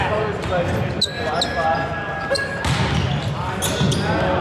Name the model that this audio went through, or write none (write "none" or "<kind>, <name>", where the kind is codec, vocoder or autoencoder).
none